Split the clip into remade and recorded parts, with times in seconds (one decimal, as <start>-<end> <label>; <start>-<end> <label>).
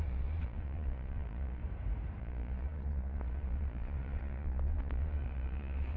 0.0-1.6 remade; 1.6-2.2 recorded; 2.2-6.0 remade